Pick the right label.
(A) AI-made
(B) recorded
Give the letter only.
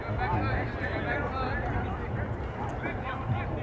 B